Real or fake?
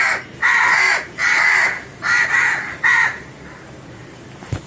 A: fake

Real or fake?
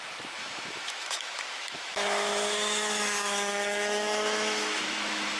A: fake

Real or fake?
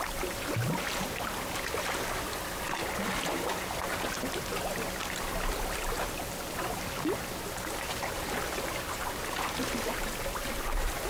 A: real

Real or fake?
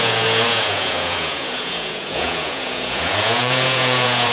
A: fake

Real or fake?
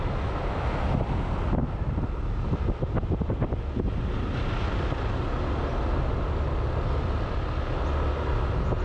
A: real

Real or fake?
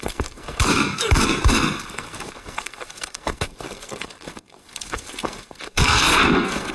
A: fake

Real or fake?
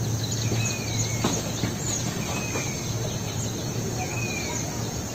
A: real